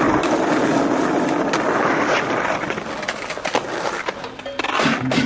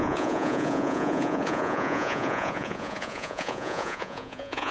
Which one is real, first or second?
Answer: first